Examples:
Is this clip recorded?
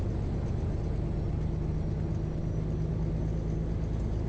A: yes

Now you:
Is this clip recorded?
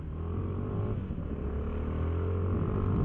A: yes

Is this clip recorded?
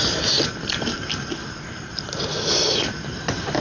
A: yes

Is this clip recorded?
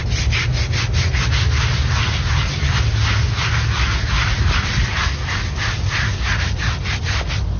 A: yes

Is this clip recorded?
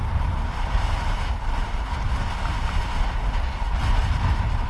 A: yes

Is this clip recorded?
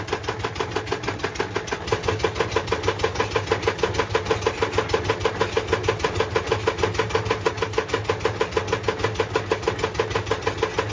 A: yes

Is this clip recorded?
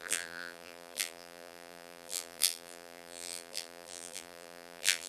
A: no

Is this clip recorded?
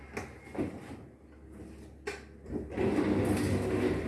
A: yes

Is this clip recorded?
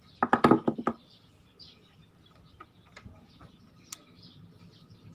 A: yes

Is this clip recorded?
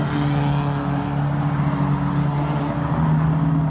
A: yes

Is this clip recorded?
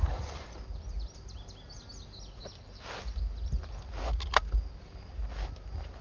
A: yes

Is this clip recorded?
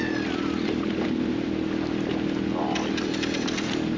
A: yes